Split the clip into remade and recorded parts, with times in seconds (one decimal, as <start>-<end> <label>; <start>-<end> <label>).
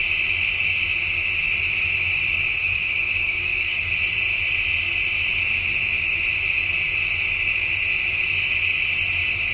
0.0-2.6 recorded; 2.6-3.9 remade; 3.9-9.5 recorded